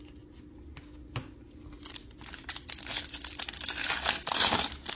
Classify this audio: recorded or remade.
recorded